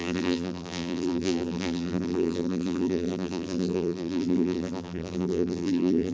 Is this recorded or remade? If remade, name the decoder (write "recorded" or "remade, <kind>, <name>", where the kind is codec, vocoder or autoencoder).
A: remade, vocoder, BigVGAN v2